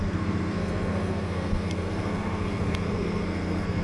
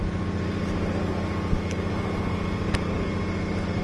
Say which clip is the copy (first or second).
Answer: first